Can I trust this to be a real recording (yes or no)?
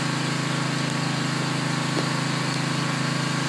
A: yes